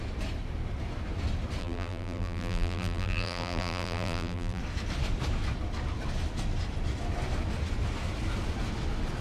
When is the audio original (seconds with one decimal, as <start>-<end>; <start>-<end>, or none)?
0.0-1.6; 4.6-9.2